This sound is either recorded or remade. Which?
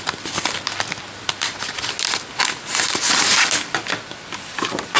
recorded